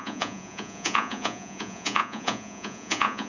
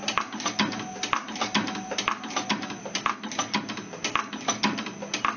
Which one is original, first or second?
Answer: second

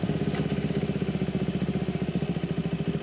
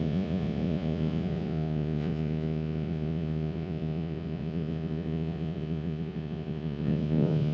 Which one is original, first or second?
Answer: first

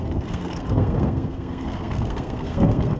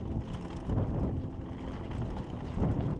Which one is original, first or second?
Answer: second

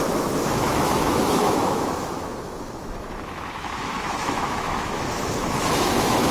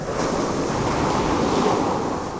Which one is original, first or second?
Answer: second